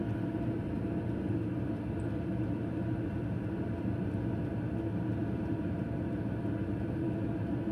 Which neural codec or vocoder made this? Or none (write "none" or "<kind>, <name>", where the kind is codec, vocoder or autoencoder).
none